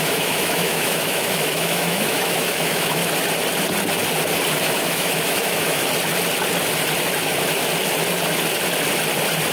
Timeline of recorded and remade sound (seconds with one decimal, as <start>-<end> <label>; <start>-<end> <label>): 0.0-3.0 remade; 3.0-4.6 recorded; 4.6-5.8 remade; 5.8-9.5 recorded